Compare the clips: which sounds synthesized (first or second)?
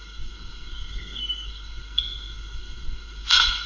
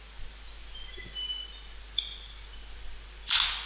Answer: first